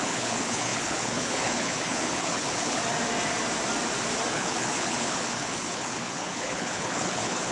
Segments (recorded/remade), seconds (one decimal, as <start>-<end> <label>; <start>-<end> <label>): 0.0-2.8 remade; 2.8-4.3 recorded; 4.3-7.5 remade